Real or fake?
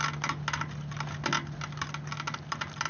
real